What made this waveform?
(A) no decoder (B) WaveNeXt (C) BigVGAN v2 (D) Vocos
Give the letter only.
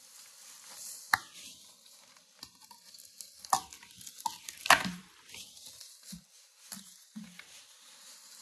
A